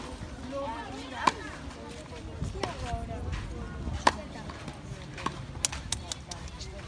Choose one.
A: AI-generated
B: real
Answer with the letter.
B